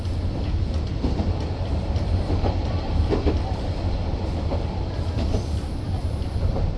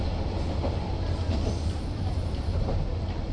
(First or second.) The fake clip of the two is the first